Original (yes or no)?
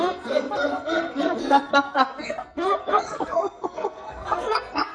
no